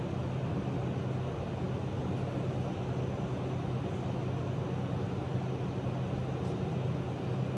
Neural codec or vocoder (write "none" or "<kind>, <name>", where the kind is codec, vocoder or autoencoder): none